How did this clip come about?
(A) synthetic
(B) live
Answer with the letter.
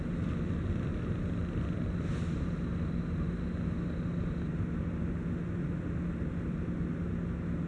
B